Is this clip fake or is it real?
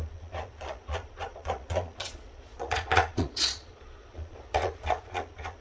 fake